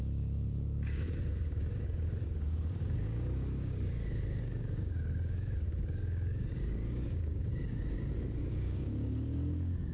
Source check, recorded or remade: remade